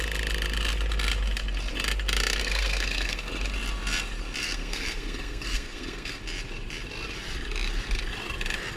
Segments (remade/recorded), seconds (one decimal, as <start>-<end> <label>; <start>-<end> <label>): 0.0-2.4 recorded; 2.4-3.3 remade; 3.3-4.4 recorded; 4.4-6.2 remade; 6.2-8.8 recorded